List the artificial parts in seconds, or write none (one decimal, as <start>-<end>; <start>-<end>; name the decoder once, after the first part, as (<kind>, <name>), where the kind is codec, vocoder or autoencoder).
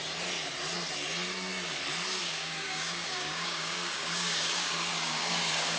2.2-5.8 (codec, DAC)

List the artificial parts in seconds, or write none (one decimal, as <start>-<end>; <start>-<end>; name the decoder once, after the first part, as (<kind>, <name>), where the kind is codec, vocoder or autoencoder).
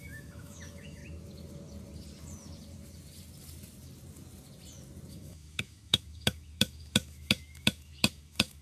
0.0-1.0 (autoencoder, DAC-VAE); 5.1-8.6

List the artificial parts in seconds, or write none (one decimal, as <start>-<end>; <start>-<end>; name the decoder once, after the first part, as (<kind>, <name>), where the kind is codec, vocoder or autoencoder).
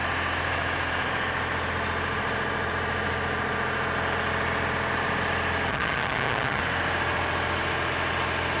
5.7-6.6 (vocoder, HiFi-GAN)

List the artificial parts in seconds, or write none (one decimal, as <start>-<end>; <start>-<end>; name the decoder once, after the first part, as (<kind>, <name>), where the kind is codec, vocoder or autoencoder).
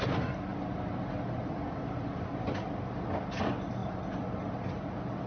none